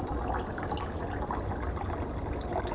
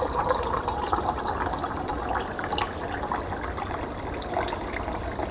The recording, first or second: first